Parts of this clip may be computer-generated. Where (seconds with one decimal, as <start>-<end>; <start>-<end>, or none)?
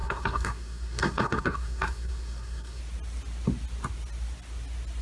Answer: 0.0-2.8